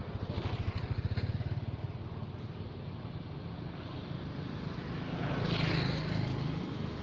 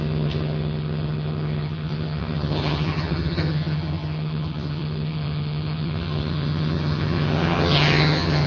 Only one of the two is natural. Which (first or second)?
first